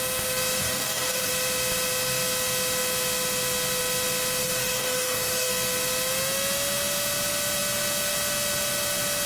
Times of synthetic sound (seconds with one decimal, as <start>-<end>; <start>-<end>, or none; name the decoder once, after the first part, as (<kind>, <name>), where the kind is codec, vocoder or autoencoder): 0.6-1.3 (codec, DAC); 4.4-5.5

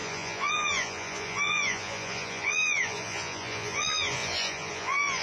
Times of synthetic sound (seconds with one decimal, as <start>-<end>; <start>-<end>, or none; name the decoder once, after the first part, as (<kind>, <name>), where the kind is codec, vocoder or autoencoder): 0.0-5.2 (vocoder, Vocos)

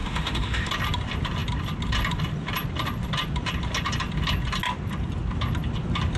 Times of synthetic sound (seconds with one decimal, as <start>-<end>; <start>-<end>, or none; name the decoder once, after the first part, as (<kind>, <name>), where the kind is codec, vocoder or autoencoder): 0.0-0.7 (autoencoder, DAC-VAE)

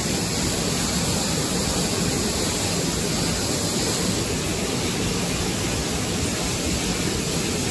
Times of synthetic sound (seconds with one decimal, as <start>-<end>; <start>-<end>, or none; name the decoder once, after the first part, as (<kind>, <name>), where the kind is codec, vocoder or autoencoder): none